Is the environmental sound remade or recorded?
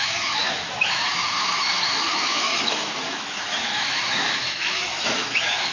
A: remade